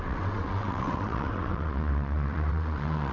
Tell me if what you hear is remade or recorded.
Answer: remade